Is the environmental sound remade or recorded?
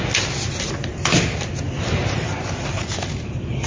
recorded